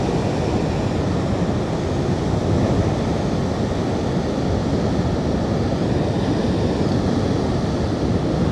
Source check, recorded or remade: recorded